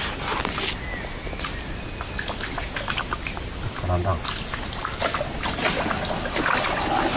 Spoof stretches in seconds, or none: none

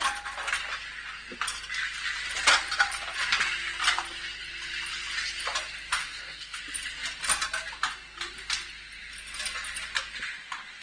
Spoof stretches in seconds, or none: 6.0-6.6 (codec, SNAC)

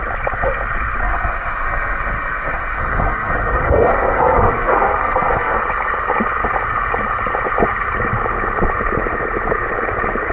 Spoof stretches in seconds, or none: 1.0-5.6 (codec, SNAC)

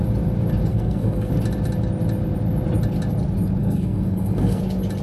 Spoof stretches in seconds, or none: 0.7-1.3 (codec, SNAC); 3.6-4.6

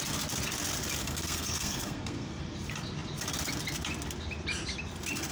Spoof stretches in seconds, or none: 1.0-2.4 (codec, SNAC)

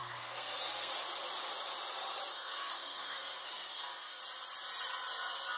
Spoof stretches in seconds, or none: 0.0-0.9 (codec, SNAC); 2.3-4.2

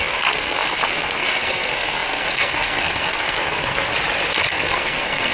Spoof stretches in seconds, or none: 0.0-3.9 (codec, SNAC); 4.5-5.3